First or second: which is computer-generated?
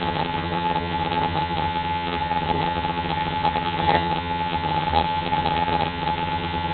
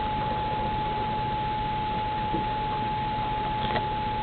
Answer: first